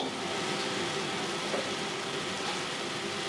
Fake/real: real